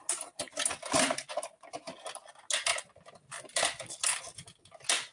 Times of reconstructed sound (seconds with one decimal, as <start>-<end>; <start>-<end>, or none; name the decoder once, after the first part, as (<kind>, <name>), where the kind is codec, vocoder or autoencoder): none